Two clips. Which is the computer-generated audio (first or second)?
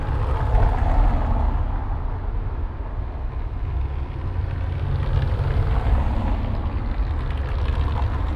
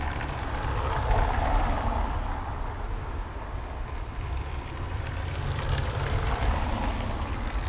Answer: second